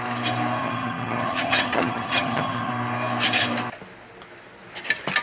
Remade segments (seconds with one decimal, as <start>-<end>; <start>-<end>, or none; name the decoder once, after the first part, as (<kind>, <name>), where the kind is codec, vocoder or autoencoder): 0.6-2.7 (vocoder, HiFi-GAN)